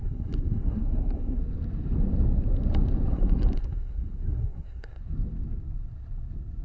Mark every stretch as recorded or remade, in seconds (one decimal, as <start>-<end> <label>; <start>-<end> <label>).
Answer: 0.0-1.4 remade; 1.4-3.1 recorded; 3.1-5.0 remade; 5.0-6.6 recorded